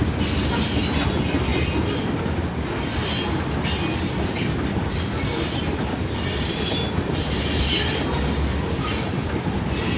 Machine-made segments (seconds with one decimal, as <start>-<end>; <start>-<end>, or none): none